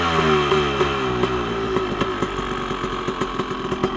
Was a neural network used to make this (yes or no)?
no